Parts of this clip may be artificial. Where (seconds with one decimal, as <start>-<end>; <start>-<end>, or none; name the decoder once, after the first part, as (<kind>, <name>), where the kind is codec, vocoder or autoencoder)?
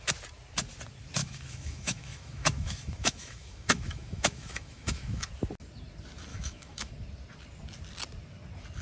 1.2-5.3 (autoencoder, DAC-VAE); 6.3-6.9